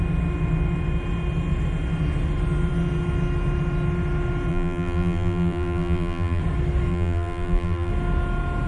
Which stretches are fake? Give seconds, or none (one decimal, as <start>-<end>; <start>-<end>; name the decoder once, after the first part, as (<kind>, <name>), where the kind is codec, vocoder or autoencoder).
4.5-6.4 (vocoder, BigVGAN v2); 6.9-7.9